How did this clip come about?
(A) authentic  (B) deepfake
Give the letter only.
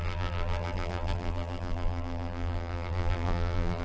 B